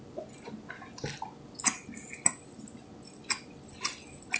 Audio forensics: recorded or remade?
recorded